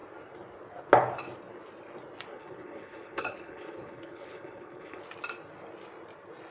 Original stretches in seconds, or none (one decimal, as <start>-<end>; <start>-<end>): 0.0-2.3; 5.0-6.5